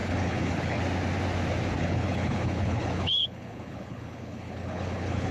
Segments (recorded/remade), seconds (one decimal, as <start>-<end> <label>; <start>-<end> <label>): 0.0-0.8 remade; 0.8-1.8 recorded; 1.8-5.3 remade